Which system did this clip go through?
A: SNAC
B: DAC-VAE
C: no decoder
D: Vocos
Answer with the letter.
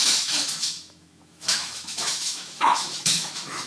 B